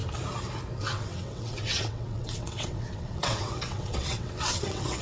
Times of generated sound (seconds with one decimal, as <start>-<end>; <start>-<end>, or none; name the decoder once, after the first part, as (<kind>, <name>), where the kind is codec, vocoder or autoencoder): 0.8-5.0 (vocoder, WaveNeXt)